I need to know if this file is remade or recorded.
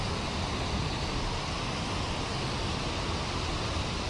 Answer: recorded